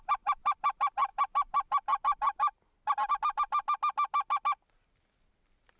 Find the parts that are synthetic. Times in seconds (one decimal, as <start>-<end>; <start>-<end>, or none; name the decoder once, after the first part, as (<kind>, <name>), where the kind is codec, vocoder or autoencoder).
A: none